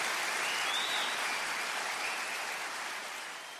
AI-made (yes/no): no